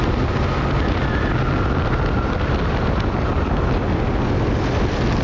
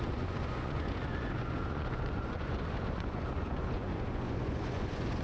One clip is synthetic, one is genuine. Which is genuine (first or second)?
first